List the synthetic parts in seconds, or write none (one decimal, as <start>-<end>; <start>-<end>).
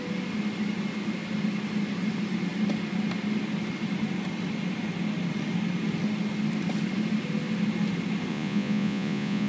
8.3-9.5